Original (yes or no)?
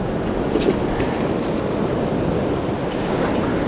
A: yes